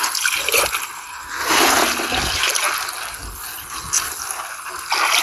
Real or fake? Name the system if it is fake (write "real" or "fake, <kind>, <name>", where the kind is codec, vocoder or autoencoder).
real